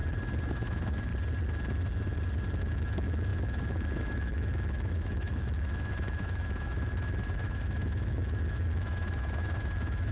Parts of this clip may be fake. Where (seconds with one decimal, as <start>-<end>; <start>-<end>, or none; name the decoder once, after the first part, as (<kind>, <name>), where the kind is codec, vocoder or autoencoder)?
0.5-1.1 (autoencoder, DAC-VAE); 2.6-10.1